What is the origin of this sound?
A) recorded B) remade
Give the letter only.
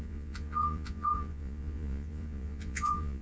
B